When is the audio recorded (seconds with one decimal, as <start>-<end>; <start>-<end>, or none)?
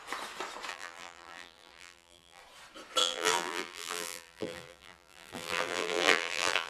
0.0-0.7; 2.4-3.0